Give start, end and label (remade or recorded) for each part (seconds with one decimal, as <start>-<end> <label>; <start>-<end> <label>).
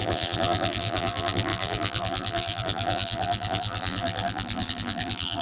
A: 0.0-5.4 remade